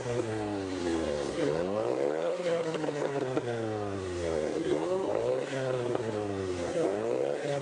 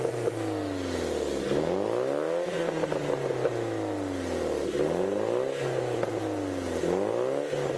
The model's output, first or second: first